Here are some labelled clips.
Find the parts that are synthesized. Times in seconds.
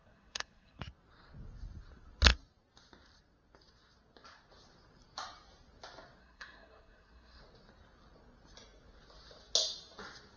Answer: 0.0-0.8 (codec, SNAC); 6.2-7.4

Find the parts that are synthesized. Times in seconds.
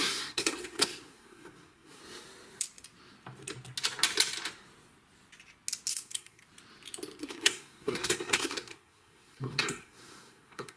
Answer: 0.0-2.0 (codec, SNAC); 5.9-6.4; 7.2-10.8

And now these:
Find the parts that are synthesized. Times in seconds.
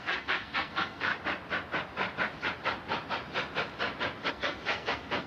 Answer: 0.0-1.1 (codec, SNAC); 4.3-5.3